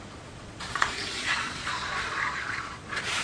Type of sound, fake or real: fake